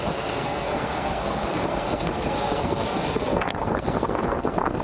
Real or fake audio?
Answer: fake